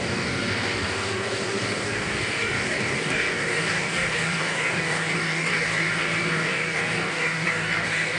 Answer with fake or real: fake